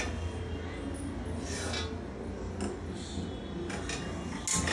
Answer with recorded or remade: recorded